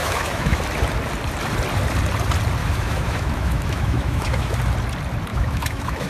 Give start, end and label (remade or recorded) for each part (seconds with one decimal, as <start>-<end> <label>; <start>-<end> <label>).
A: 0.0-0.6 remade; 0.6-2.6 recorded; 2.6-4.6 remade; 4.6-5.3 recorded; 5.3-6.1 remade